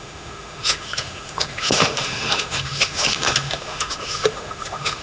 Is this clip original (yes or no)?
no